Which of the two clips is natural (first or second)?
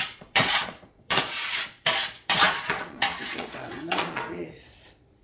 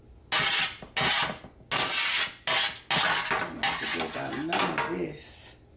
second